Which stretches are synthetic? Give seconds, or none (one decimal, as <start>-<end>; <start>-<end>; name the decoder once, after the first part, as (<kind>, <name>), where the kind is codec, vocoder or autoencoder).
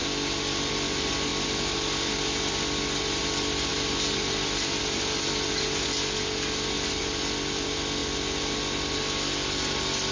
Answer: 1.3-2.1 (vocoder, BigVGAN v2)